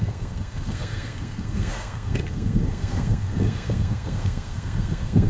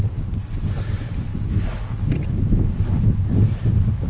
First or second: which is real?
second